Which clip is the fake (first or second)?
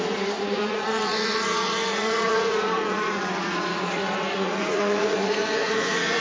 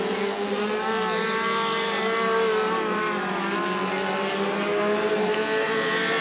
first